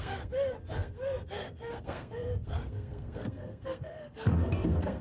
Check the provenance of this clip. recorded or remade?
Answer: remade